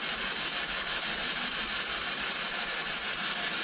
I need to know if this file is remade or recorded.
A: recorded